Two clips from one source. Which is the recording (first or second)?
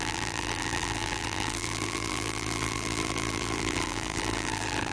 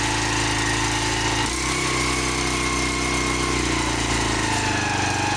second